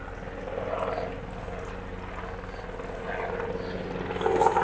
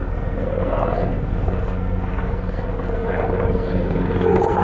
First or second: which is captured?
first